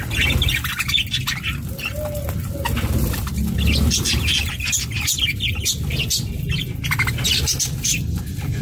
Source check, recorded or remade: recorded